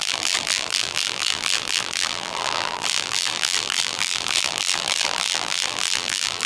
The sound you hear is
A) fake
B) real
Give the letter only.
A